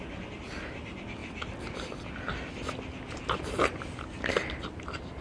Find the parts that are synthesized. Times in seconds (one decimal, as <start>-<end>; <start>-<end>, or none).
none